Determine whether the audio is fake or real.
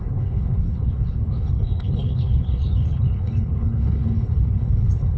fake